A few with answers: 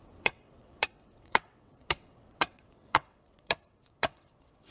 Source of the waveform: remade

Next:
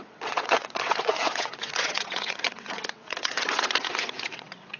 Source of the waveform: remade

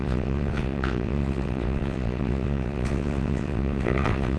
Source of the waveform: remade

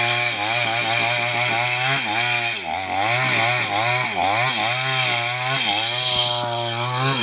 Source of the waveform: recorded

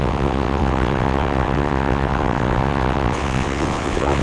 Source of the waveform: remade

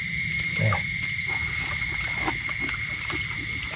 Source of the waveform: recorded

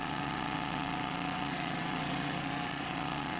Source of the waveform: remade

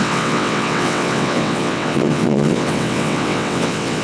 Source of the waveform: remade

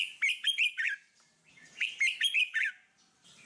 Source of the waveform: recorded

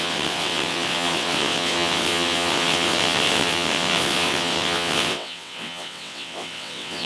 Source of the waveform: remade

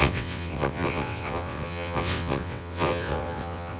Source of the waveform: remade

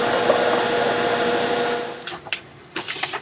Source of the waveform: recorded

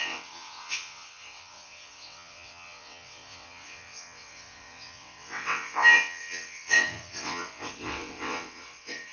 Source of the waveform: remade